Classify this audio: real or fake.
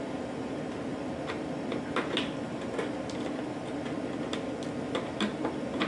real